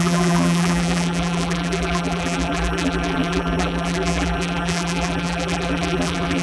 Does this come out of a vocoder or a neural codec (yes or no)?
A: yes